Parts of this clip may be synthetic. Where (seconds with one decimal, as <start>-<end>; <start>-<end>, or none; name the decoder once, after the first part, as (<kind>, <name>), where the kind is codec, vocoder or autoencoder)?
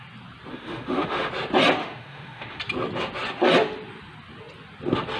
0.5-1.3 (autoencoder, DAC-VAE); 1.8-2.6